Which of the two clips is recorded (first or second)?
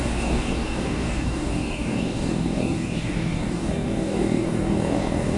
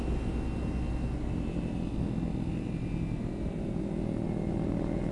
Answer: second